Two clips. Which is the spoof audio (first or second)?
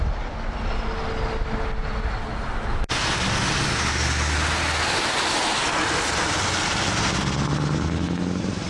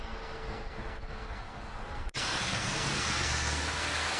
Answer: second